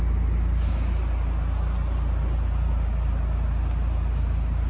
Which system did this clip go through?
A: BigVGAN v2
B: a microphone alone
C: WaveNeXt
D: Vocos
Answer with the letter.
B